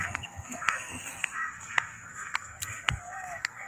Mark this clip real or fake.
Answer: fake